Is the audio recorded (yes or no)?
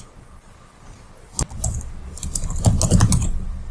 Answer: yes